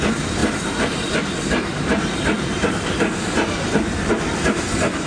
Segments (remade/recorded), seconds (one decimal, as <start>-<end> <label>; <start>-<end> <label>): 0.0-0.4 recorded; 0.4-1.1 remade; 1.1-1.7 recorded; 1.7-4.1 remade; 4.1-5.1 recorded